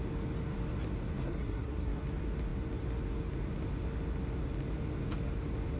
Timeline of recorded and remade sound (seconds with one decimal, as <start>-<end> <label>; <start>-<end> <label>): 0.0-1.2 recorded; 1.2-2.0 remade; 2.0-5.8 recorded